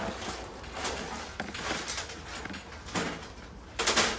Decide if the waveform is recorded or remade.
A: recorded